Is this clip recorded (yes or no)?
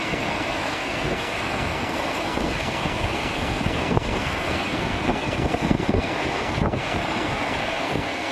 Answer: no